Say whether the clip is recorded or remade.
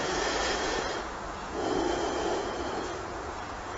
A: remade